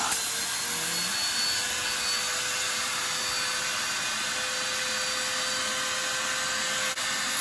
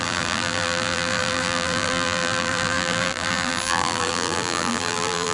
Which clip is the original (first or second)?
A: first